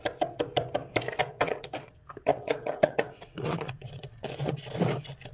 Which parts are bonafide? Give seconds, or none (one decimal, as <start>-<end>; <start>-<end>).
0.0-1.2; 1.9-2.3; 4.5-5.3